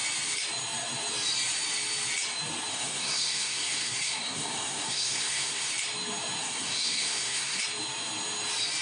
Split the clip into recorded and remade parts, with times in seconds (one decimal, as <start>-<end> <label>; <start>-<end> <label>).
0.0-2.7 recorded; 2.7-5.7 remade; 5.7-6.4 recorded; 6.4-7.6 remade; 7.6-8.8 recorded